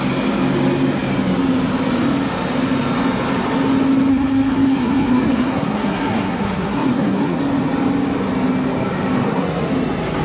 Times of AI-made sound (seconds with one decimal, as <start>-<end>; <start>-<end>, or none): 4.1-7.4; 9.2-9.7